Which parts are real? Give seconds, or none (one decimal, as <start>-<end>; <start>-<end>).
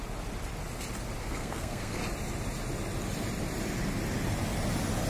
0.0-1.2; 2.0-5.1